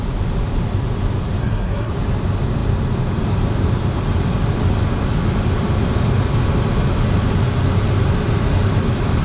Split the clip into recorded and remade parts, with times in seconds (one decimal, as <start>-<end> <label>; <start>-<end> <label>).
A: 0.0-1.4 recorded; 1.4-1.9 remade; 1.9-9.2 recorded